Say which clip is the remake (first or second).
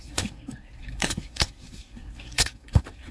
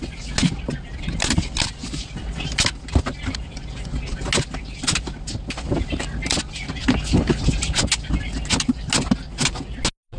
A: first